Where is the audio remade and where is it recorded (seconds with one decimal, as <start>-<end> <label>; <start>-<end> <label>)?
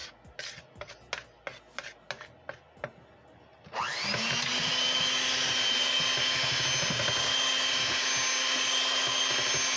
0.0-9.8 recorded